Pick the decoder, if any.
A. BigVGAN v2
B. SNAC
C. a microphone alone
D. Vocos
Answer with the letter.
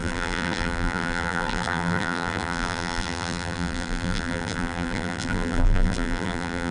A